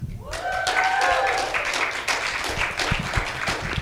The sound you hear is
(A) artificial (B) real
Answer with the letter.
B